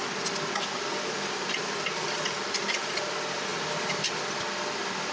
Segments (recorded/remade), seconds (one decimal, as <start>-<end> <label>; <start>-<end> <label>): 0.0-5.1 recorded